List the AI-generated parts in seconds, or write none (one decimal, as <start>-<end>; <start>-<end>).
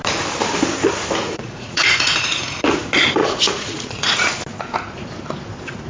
1.2-2.8; 3.2-4.3